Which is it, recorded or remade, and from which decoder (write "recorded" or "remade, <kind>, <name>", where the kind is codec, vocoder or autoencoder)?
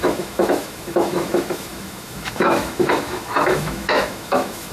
remade, autoencoder, DAC-VAE